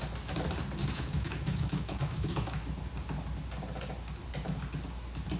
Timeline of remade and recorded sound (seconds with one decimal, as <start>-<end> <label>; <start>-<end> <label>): 0.0-0.8 recorded; 0.8-2.6 remade; 2.6-5.4 recorded